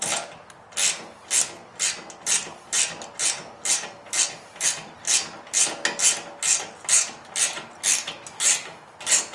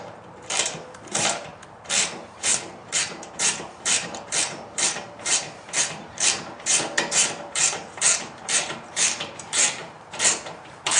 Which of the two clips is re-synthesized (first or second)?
second